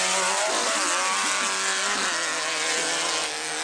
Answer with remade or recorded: recorded